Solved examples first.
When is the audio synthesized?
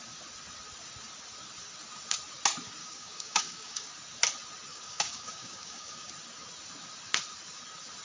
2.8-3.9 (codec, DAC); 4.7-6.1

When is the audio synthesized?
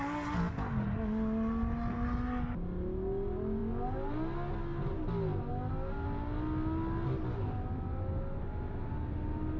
none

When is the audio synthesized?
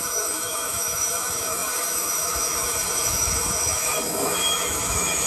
0.0-5.3 (autoencoder, DAC-VAE)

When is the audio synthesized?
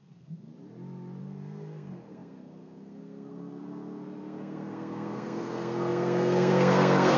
0.0-0.5 (codec, SNAC); 1.2-7.2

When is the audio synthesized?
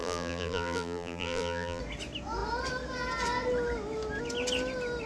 0.0-1.8 (vocoder, BigVGAN v2)